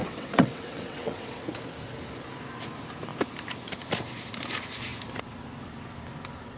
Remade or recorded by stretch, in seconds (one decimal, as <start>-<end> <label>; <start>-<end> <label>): 0.0-1.4 remade; 1.4-6.6 recorded